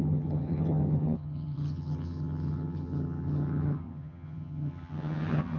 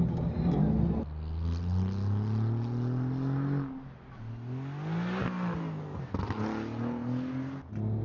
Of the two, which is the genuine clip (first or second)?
second